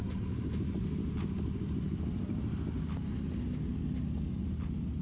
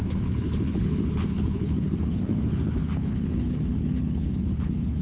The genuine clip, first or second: first